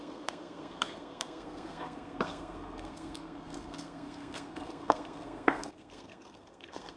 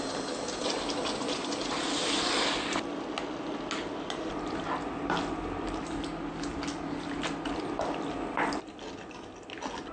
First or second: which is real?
second